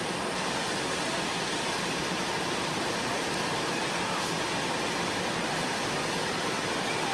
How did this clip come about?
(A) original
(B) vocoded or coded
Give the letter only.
A